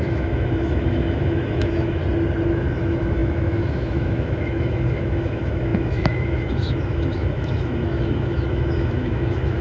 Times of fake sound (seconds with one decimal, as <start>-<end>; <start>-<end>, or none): 0.0-2.0; 2.5-9.6